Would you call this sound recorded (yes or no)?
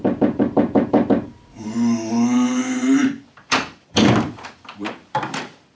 no